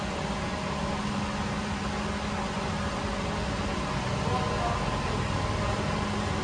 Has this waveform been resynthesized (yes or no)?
no